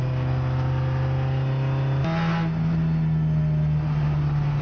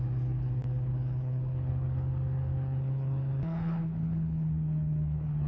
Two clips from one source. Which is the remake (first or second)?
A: second